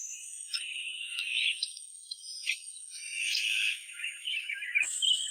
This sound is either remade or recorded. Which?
remade